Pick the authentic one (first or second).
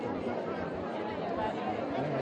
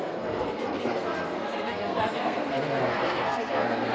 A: first